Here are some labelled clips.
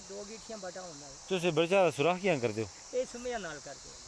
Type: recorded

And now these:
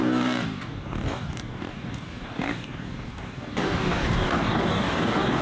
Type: remade